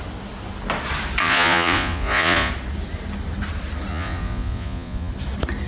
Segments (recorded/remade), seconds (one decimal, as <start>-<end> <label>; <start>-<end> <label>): 0.0-1.2 recorded; 1.2-2.5 remade; 2.5-3.9 recorded; 3.9-5.1 remade; 5.1-5.7 recorded